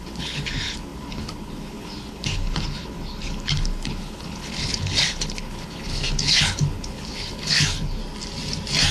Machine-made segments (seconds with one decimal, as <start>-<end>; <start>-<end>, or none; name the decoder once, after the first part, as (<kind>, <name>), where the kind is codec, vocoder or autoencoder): 0.0-8.0 (codec, HILCodec)

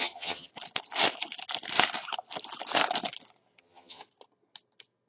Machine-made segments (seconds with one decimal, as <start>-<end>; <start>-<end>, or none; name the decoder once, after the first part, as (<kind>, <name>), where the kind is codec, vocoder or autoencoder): 0.0-0.5 (vocoder, HiFi-GAN); 3.6-4.0

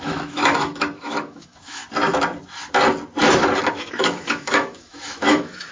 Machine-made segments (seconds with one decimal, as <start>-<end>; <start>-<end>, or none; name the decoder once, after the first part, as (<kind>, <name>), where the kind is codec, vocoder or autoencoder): 0.0-1.8 (autoencoder, DAC-VAE); 3.7-5.7

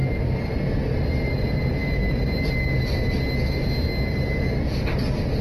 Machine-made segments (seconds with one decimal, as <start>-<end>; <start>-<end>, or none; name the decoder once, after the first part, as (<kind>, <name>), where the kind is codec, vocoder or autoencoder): none